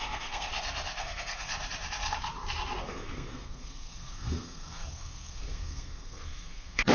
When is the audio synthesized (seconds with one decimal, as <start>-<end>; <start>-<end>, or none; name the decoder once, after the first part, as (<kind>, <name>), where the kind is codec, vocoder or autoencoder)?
0.0-0.5 (codec, SNAC); 1.0-1.5; 2.8-6.9